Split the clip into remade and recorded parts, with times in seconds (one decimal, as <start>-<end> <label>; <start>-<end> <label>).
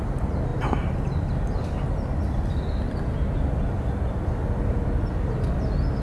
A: 0.0-6.0 recorded